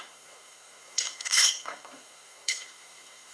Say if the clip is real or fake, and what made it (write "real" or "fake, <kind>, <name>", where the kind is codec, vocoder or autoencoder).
fake, codec, SNAC